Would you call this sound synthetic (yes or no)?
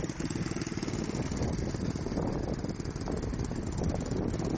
no